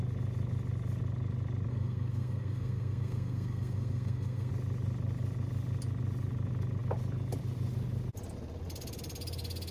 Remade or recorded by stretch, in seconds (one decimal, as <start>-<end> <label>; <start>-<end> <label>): 0.0-1.7 recorded; 1.7-4.5 remade; 4.5-9.7 recorded